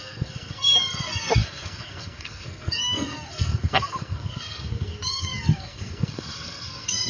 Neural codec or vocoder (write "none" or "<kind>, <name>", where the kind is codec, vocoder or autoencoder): codec, SNAC